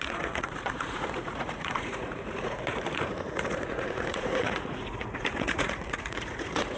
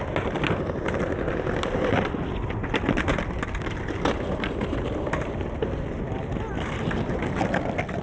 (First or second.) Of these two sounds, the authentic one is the second